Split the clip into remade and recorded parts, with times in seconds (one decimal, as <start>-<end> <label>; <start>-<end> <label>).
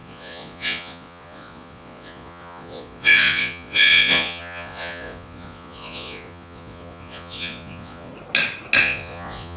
0.0-8.1 remade; 8.1-8.8 recorded; 8.8-9.6 remade